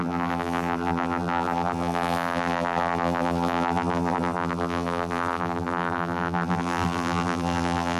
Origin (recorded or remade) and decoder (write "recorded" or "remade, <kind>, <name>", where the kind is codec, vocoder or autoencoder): remade, vocoder, BigVGAN v2